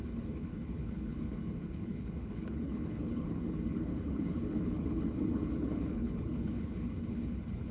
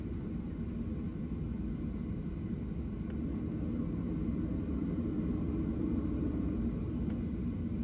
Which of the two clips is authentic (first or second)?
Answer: second